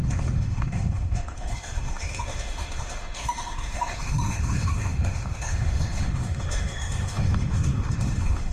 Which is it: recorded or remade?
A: remade